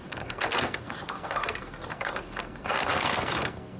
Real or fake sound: fake